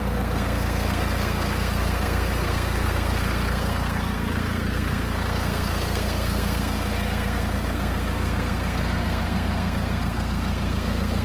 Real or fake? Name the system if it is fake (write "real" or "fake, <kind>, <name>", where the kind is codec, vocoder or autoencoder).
fake, codec, SNAC